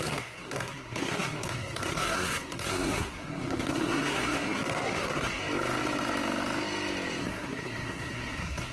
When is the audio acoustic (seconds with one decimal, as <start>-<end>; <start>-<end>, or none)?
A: 5.4-7.2